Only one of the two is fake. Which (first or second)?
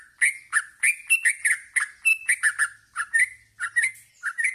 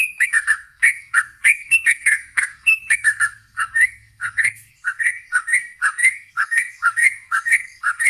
second